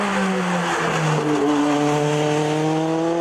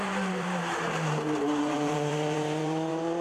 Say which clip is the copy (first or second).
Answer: second